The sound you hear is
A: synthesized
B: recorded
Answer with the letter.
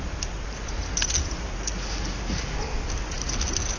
B